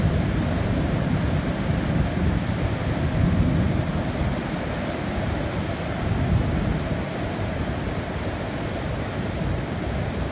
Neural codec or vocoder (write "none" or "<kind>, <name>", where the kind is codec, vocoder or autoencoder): none